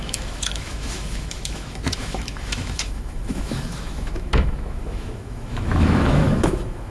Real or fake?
fake